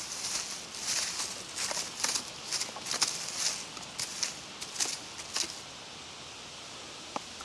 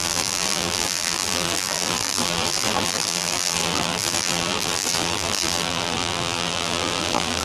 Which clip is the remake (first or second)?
second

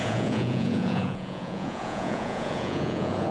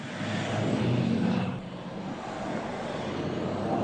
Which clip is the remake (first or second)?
first